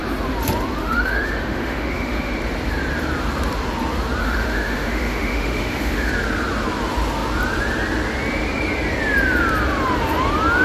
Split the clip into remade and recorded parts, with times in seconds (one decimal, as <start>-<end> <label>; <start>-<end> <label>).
0.0-0.8 recorded; 0.8-2.3 remade; 2.3-4.2 recorded; 4.2-6.1 remade; 6.1-10.6 recorded